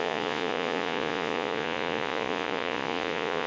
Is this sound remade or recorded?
remade